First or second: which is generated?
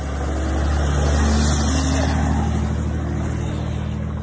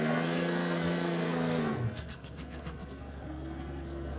second